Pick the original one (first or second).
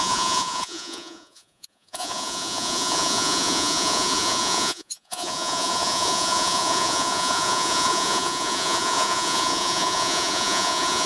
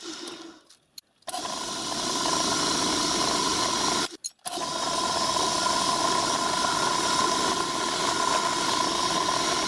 second